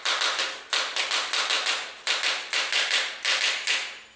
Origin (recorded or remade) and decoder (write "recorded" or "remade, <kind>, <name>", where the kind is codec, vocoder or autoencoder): recorded